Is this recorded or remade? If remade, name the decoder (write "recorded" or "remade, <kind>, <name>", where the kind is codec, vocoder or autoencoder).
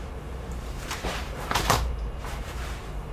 remade, vocoder, BigVGAN v2